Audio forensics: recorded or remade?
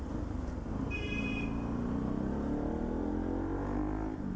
recorded